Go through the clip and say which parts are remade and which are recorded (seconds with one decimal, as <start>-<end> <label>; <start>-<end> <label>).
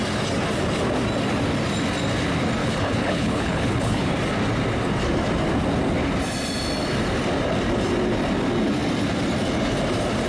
0.0-2.6 recorded; 2.6-4.1 remade; 4.1-10.3 recorded